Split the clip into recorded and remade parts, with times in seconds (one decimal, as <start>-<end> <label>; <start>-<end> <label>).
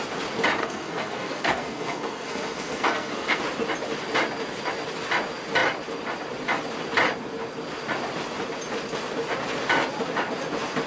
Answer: 0.0-0.6 recorded; 0.6-3.4 remade; 3.4-10.9 recorded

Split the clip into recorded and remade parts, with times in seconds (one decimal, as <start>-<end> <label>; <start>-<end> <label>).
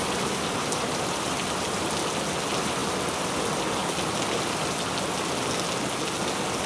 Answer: 0.0-1.3 remade; 1.3-6.7 recorded